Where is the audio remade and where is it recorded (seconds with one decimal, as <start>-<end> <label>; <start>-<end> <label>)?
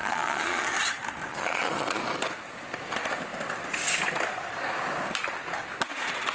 0.0-0.7 remade; 0.7-1.3 recorded; 1.3-2.0 remade; 2.0-6.3 recorded